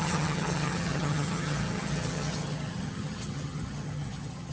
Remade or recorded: remade